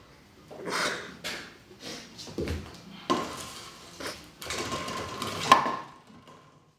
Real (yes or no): yes